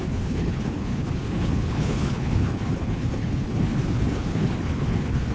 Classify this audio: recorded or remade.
remade